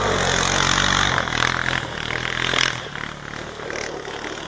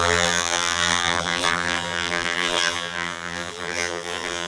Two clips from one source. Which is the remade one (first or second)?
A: second